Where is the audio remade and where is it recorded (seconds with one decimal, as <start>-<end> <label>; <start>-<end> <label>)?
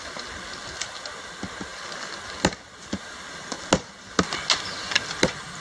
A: 0.0-5.6 recorded